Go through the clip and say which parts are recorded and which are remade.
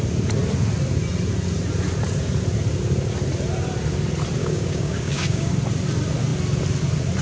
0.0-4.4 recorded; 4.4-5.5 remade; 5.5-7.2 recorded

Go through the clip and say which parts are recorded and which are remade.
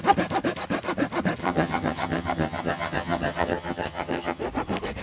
0.0-1.4 recorded; 1.4-4.4 remade; 4.4-5.0 recorded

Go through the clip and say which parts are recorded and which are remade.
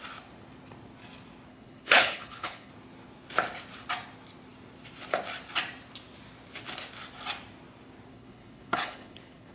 0.0-1.5 recorded; 1.5-2.7 remade; 2.7-8.1 recorded; 8.1-9.5 remade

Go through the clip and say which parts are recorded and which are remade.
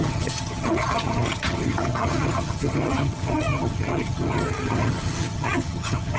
0.0-6.2 remade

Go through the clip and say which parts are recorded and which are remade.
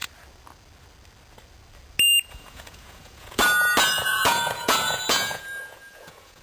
0.0-2.3 recorded; 2.3-3.4 remade; 3.4-3.9 recorded; 3.9-6.4 remade